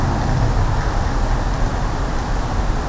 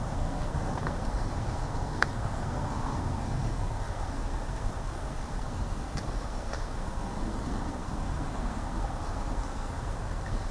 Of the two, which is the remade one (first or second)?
second